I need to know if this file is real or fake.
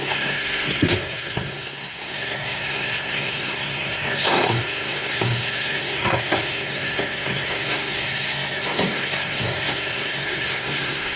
fake